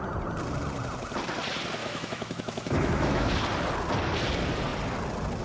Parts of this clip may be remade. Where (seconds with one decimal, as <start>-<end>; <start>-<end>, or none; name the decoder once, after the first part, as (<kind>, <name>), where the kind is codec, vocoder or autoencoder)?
1.8-3.3 (autoencoder, DAC-VAE)